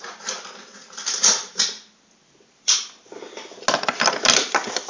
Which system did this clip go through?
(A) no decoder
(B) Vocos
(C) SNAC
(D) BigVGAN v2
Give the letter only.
A